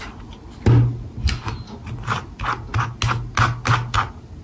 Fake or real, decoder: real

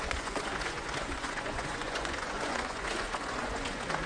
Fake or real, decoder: fake, vocoder, Vocos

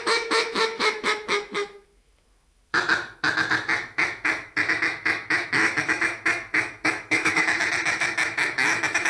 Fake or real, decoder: fake, autoencoder, DAC-VAE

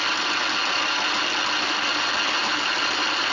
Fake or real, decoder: real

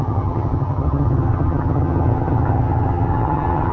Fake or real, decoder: fake, vocoder, HiFi-GAN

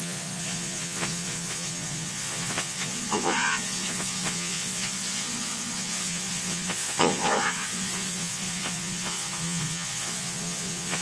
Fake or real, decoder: fake, vocoder, Vocos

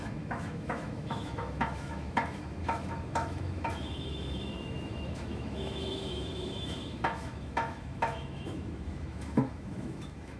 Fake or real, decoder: fake, autoencoder, DAC-VAE